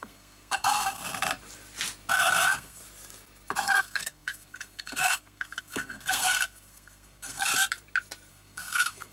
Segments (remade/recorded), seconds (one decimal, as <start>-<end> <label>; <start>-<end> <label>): 0.0-1.0 remade; 1.0-2.1 recorded; 2.1-2.8 remade; 2.8-3.8 recorded; 3.8-7.5 remade; 7.5-8.3 recorded; 8.3-9.1 remade

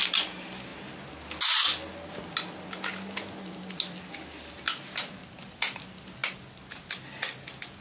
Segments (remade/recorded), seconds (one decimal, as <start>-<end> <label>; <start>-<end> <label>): 0.0-7.8 recorded

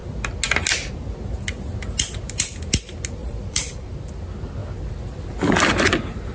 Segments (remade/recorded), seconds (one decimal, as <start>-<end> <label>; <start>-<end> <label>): 0.0-3.2 recorded; 3.2-4.0 remade; 4.0-6.3 recorded

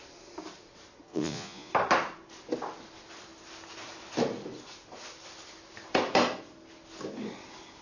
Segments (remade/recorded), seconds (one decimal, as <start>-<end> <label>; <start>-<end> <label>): 0.0-1.1 recorded; 1.1-1.7 remade; 1.7-7.8 recorded

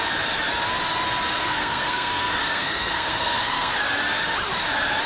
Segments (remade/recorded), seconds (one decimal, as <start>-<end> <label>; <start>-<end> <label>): 0.0-1.4 recorded; 1.4-3.8 remade; 3.8-5.1 recorded

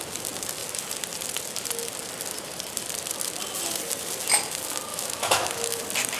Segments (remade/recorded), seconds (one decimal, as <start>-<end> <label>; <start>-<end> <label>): 0.0-4.9 recorded; 4.9-5.8 remade; 5.8-6.2 recorded